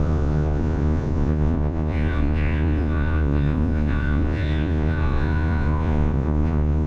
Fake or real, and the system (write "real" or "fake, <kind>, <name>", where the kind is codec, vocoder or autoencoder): fake, vocoder, Vocos